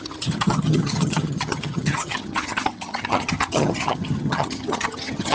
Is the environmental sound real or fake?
fake